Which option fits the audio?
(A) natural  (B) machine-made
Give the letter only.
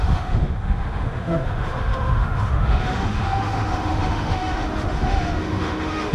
B